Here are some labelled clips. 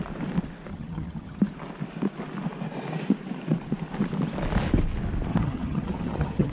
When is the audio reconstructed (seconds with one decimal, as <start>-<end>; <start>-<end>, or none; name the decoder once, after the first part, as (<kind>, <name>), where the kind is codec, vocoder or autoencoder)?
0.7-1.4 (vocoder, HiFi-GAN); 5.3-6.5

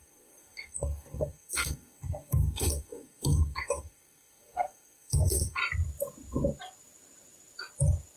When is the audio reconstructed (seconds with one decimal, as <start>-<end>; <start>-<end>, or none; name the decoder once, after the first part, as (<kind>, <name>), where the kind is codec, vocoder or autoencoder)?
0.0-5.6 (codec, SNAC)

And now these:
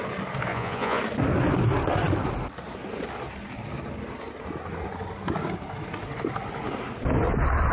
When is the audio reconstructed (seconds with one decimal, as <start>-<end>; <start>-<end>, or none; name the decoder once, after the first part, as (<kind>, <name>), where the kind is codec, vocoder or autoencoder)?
0.5-1.0 (vocoder, Vocos)

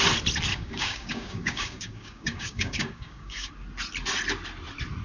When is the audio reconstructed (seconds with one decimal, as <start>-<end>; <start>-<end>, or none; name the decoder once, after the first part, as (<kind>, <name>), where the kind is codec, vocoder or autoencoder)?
0.5-3.5 (codec, DAC)